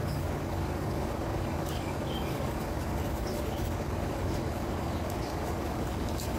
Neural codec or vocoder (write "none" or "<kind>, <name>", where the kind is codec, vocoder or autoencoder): codec, DAC